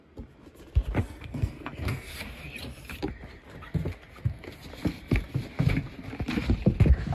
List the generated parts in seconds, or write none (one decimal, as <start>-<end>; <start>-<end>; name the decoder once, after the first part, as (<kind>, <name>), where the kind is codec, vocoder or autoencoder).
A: 1.0-2.1 (codec, SNAC)